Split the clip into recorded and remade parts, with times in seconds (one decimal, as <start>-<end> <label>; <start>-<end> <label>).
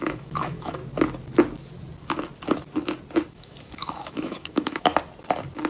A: 0.0-0.8 remade; 0.8-3.3 recorded; 3.3-4.9 remade; 4.9-5.7 recorded